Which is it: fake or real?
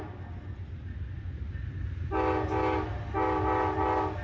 real